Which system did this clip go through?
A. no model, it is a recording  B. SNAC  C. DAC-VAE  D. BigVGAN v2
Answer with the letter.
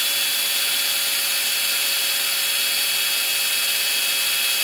A